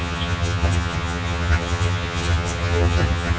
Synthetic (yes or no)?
yes